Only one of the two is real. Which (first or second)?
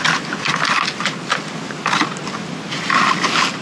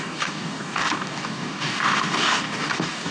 first